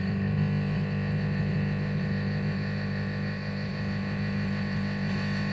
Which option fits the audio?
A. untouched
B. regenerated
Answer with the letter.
B